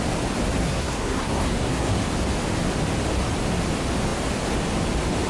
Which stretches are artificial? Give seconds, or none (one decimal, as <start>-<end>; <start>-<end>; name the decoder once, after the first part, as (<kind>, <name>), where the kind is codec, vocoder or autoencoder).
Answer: 0.6-2.0 (codec, SNAC)